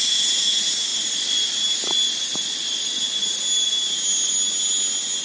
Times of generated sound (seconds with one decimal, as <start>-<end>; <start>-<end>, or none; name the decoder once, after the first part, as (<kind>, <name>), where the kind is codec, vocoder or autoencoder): none